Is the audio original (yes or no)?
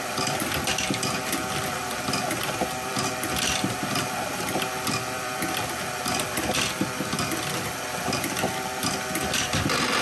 no